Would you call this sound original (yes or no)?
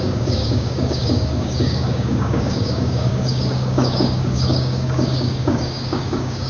no